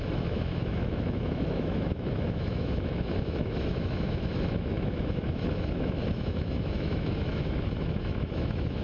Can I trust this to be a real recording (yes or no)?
no